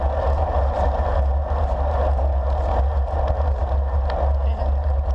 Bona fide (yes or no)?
yes